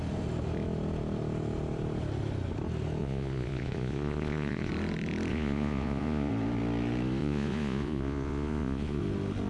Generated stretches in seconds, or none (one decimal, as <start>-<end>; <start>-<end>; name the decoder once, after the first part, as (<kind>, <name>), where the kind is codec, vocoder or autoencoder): 3.0-4.7 (vocoder, Vocos); 5.3-6.3; 7.2-9.0